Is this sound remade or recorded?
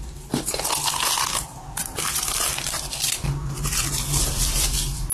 remade